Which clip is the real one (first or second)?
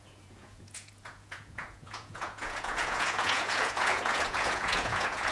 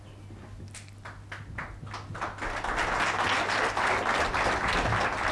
second